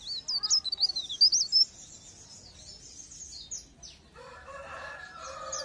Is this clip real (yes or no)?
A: yes